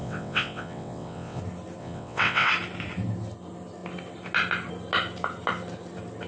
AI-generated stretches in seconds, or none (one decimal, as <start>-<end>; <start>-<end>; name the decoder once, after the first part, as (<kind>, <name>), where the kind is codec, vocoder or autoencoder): 0.0-1.4 (vocoder, WaveNeXt); 1.8-2.5